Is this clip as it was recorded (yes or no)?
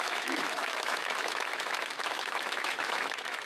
no